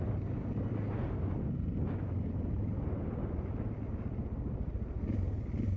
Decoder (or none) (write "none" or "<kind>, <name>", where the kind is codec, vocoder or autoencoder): none